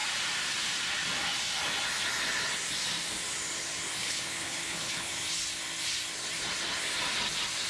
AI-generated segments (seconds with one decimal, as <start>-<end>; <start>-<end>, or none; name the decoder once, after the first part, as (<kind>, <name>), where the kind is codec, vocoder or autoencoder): 4.0-5.1 (codec, HILCodec)